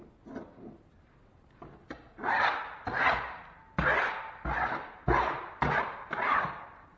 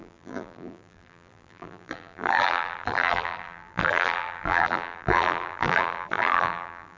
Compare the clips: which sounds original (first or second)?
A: first